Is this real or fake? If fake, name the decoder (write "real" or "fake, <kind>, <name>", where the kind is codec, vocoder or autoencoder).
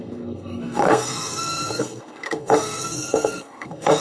fake, codec, SNAC